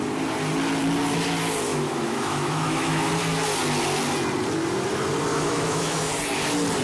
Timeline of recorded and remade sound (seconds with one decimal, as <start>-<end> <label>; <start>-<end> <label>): 0.0-1.7 recorded; 1.7-3.1 remade; 3.1-5.3 recorded; 5.3-6.1 remade; 6.1-6.8 recorded